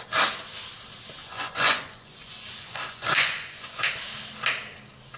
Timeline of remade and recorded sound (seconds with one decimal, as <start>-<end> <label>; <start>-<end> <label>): 0.0-1.2 recorded; 1.2-3.9 remade; 3.9-5.2 recorded